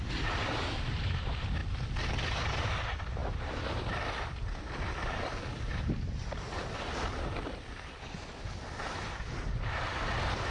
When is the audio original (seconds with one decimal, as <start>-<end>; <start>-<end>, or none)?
0.0-5.7; 7.3-10.5